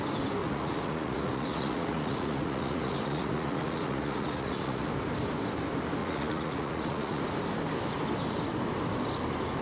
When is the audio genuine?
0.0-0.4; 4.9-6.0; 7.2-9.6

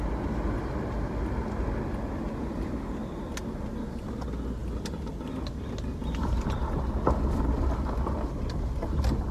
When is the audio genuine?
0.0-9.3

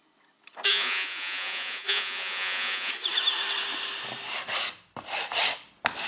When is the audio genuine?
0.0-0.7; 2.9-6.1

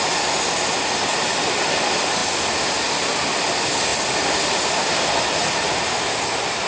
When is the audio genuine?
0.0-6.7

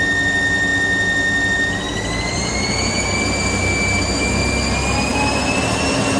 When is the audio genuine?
0.0-6.2

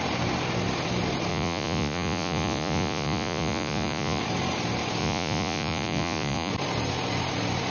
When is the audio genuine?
0.0-1.3; 4.2-5.0; 6.5-7.7

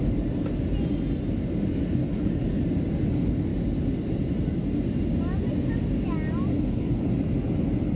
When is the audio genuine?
0.0-2.0; 2.6-6.5; 7.1-8.0